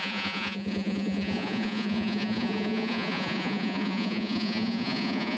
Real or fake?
fake